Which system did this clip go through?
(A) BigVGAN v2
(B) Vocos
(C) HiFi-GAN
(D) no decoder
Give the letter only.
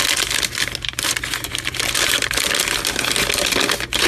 D